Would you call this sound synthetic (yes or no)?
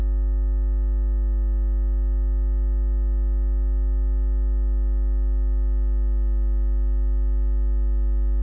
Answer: no